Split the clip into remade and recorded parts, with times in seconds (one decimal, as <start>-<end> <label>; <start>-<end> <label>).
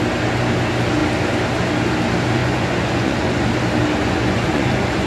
0.0-2.4 recorded; 2.4-3.5 remade; 3.5-4.0 recorded; 4.0-5.1 remade